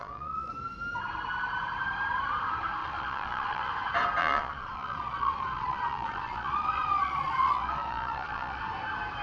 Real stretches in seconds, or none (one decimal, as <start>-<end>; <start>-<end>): 0.5-2.8; 3.7-4.2; 8.6-9.2